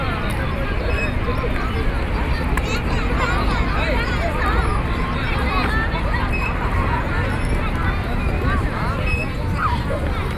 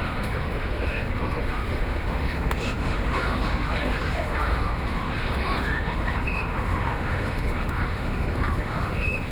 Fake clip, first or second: second